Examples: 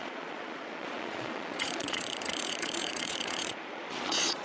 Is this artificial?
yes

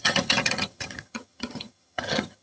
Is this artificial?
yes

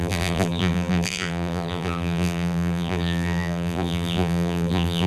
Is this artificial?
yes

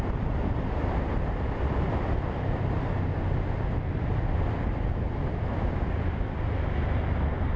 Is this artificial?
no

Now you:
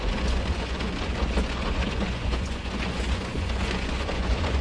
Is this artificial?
yes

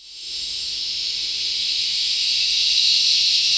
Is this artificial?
yes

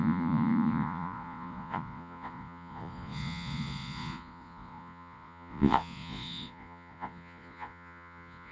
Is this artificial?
yes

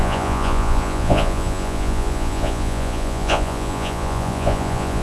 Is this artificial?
yes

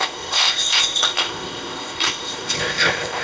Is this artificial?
yes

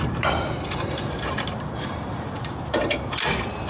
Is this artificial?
yes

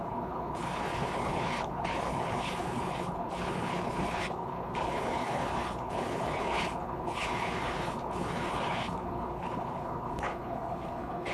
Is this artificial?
yes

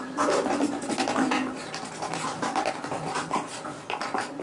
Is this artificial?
no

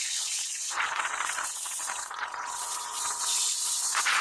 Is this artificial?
yes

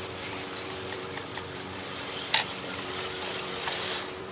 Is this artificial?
yes